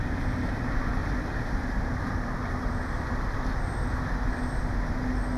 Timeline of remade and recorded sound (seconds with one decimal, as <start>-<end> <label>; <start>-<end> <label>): 0.0-1.0 recorded; 1.0-4.1 remade; 4.1-5.4 recorded